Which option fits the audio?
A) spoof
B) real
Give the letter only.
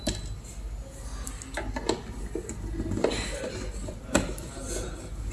B